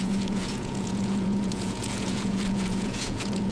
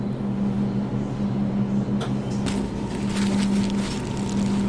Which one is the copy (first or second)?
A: first